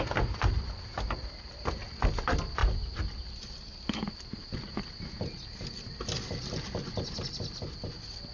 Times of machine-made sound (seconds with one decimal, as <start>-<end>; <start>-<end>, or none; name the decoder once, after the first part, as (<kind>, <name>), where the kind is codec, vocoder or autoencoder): none